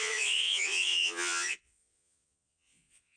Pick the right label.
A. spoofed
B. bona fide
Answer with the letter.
A